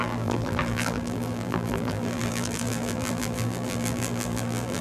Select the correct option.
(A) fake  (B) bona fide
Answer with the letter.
A